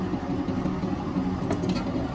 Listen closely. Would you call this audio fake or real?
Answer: real